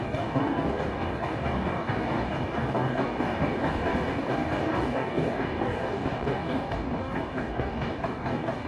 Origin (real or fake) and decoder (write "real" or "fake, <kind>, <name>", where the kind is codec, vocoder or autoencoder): fake, codec, DAC